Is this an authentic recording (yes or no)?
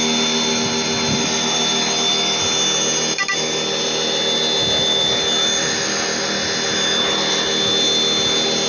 yes